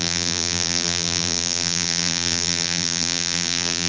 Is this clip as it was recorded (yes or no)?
no